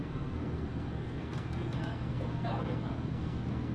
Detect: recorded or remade remade